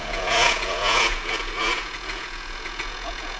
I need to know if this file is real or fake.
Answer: fake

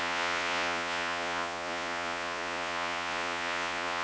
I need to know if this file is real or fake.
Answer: fake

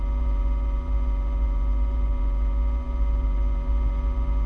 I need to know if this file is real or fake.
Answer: fake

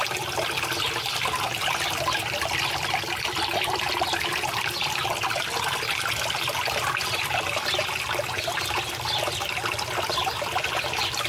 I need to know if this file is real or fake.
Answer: real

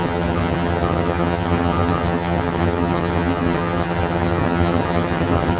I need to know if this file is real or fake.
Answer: fake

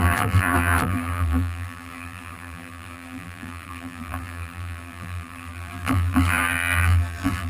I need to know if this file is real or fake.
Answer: fake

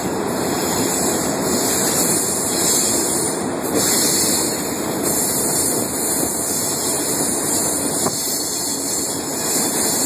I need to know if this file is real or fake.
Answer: fake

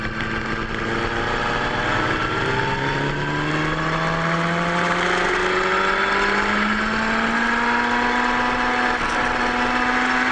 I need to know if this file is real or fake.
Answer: real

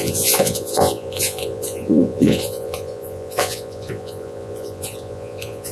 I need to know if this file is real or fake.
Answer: fake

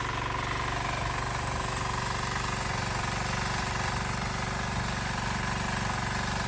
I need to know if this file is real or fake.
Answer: real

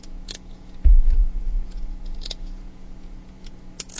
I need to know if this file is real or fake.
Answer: fake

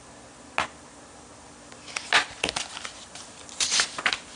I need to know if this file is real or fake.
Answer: real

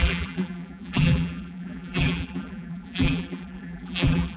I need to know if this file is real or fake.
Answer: fake